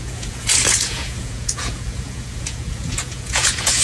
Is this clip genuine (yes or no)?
no